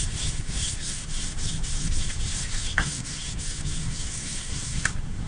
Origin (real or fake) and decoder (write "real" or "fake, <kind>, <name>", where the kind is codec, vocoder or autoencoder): fake, codec, SNAC